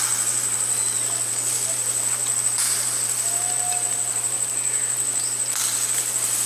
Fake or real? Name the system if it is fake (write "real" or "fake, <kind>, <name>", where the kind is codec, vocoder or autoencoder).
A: real